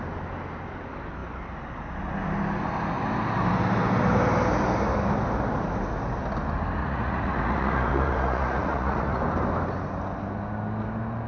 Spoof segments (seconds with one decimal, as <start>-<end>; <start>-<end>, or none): 6.8-9.2